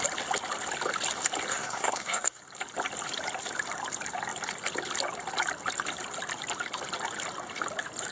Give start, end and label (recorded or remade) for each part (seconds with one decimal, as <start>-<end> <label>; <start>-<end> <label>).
0.0-1.5 recorded; 1.5-2.4 remade; 2.4-8.1 recorded